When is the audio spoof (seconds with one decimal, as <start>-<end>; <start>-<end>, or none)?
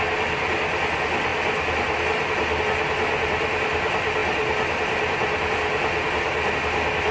none